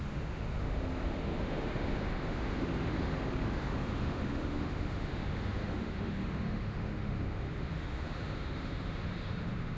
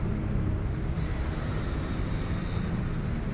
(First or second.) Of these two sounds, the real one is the second